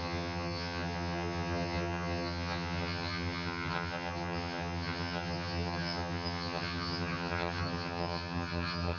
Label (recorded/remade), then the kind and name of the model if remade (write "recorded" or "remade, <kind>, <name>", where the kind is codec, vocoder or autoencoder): remade, vocoder, HiFi-GAN